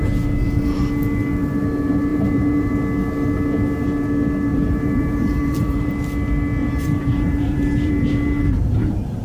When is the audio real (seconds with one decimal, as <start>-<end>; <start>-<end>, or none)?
0.0-2.1; 2.7-4.5; 5.9-6.6; 7.9-9.2